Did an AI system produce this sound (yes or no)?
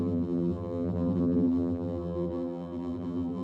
yes